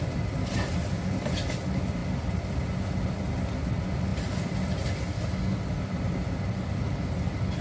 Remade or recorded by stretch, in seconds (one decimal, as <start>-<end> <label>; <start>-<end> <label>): 0.0-7.6 recorded